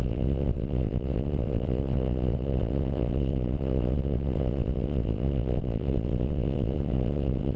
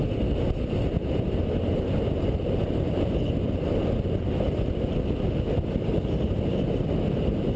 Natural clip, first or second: second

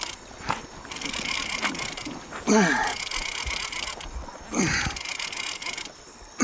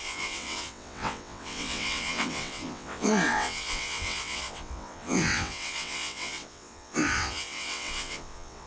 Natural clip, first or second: first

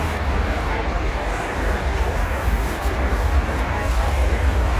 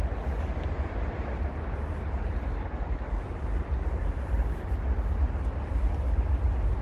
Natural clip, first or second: second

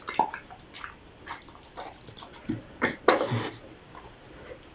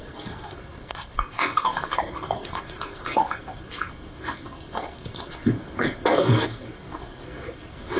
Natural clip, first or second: first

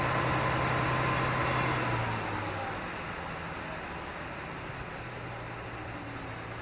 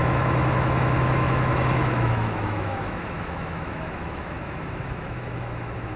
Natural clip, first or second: first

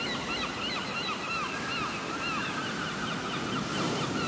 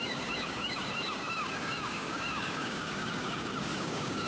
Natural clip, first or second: first